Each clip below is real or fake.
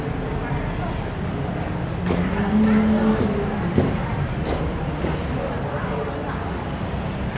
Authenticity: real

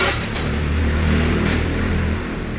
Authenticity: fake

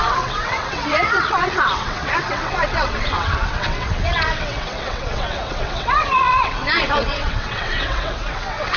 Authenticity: fake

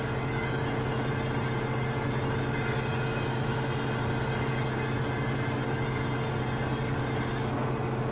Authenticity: real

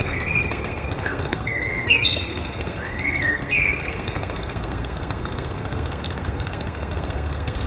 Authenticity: fake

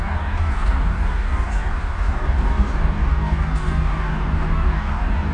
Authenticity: fake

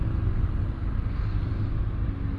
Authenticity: real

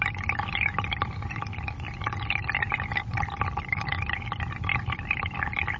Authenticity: real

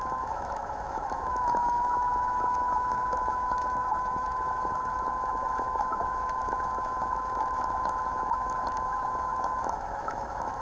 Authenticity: fake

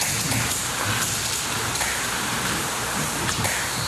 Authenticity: fake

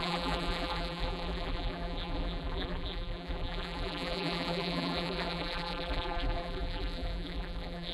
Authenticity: fake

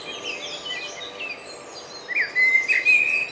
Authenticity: real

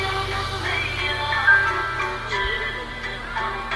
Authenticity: real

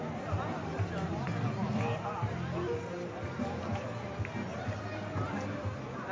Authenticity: real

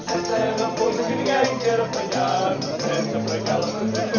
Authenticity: real